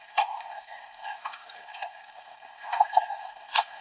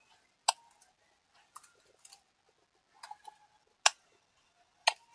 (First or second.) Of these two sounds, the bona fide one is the second